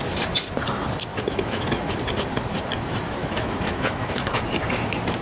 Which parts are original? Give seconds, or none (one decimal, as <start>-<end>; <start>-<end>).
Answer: 0.0-1.1; 1.9-3.2; 4.4-5.2